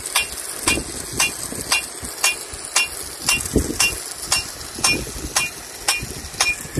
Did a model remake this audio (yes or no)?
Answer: no